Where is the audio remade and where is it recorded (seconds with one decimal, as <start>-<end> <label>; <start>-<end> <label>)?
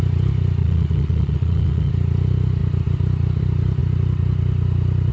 0.0-0.6 recorded; 0.6-1.9 remade; 1.9-5.1 recorded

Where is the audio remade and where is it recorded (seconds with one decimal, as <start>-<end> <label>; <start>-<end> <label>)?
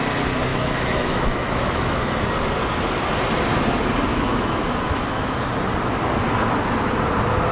0.0-0.5 recorded; 0.5-2.2 remade; 2.2-4.1 recorded; 4.1-4.6 remade; 4.6-7.5 recorded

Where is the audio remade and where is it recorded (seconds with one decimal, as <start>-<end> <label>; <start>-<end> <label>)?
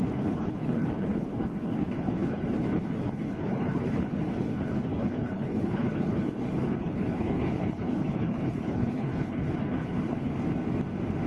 0.0-10.3 remade; 10.3-11.3 recorded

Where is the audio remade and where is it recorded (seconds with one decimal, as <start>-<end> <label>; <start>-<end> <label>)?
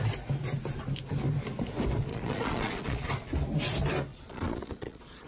0.0-2.1 recorded; 2.1-3.1 remade; 3.1-4.1 recorded; 4.1-5.3 remade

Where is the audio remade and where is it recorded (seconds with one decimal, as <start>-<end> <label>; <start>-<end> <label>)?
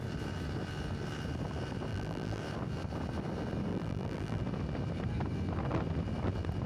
0.0-1.9 recorded; 1.9-2.4 remade; 2.4-3.7 recorded; 3.7-4.4 remade; 4.4-6.7 recorded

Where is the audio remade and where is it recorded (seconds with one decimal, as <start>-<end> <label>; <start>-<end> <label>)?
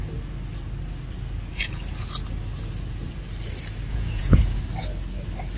0.0-3.9 recorded; 3.9-4.6 remade; 4.6-5.6 recorded